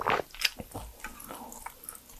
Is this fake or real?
real